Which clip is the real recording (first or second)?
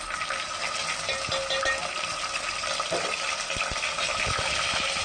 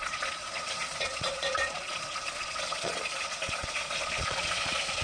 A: first